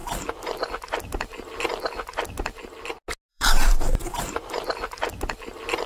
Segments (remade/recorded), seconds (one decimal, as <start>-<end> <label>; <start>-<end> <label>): 0.0-3.3 recorded; 3.3-5.1 remade; 5.1-5.9 recorded